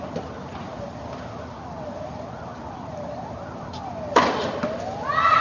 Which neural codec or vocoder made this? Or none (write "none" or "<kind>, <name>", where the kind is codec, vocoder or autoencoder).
vocoder, BigVGAN v2